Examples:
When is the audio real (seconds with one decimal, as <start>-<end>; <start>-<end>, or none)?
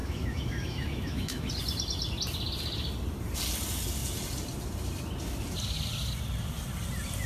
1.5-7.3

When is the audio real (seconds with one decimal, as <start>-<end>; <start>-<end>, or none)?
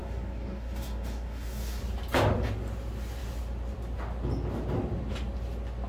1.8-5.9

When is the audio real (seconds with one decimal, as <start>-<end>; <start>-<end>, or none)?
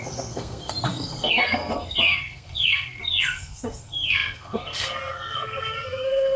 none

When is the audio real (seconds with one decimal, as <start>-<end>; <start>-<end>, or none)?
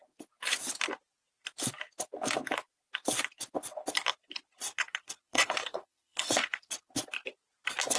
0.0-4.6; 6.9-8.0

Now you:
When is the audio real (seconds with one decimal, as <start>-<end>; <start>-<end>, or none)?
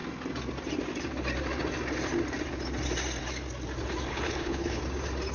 0.0-4.1; 4.8-5.3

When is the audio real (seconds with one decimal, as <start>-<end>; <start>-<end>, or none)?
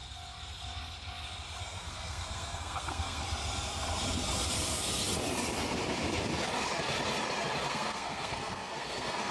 0.0-1.6; 3.2-7.7